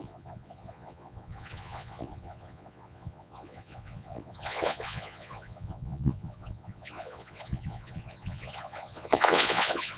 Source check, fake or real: fake